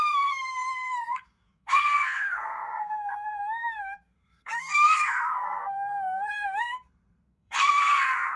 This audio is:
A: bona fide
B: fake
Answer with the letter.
B